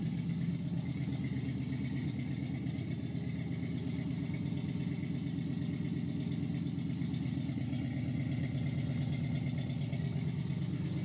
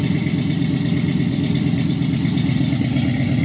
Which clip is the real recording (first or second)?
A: first